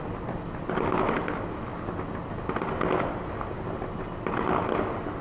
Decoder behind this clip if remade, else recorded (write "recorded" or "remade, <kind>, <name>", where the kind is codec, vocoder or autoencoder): recorded